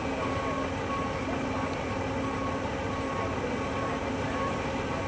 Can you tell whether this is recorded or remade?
recorded